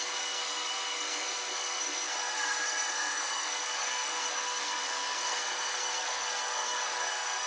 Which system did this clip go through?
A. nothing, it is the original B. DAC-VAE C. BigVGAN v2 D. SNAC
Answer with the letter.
D